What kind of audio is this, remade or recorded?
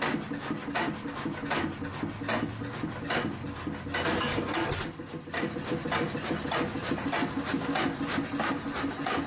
recorded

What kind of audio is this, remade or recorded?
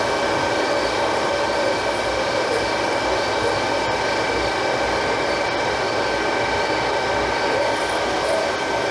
recorded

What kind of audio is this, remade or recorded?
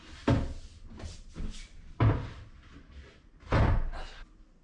recorded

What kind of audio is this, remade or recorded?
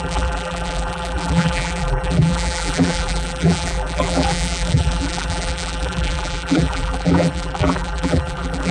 remade